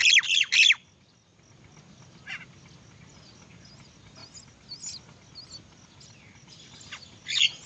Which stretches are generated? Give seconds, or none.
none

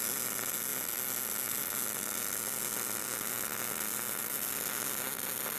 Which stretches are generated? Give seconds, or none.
none

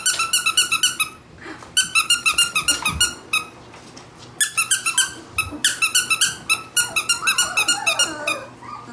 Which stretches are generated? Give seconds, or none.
none

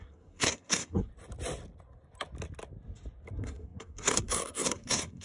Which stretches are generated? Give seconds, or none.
0.0-1.1 (codec, SNAC); 3.3-5.2

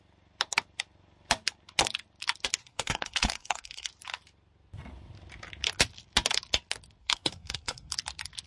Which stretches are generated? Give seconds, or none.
2.6-3.9 (codec, SNAC); 7.0-7.9